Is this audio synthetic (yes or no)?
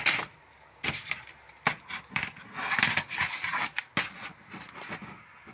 no